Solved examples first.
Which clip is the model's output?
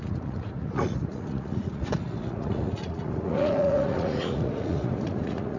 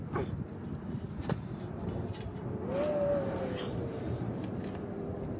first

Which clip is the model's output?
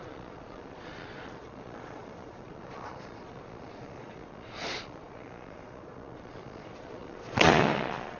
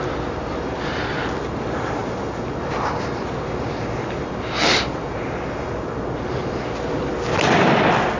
first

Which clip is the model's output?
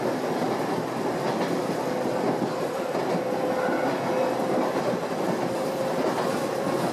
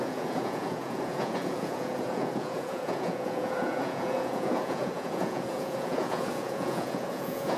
second